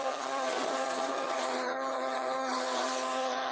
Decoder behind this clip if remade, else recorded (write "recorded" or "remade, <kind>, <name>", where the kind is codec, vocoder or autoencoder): remade, vocoder, HiFi-GAN